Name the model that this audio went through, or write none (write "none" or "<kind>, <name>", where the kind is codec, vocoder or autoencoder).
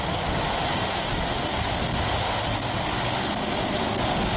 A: none